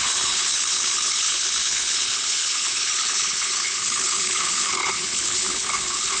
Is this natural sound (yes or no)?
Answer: no